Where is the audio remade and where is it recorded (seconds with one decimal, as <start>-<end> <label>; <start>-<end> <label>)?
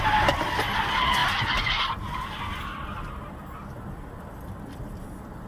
0.0-5.5 recorded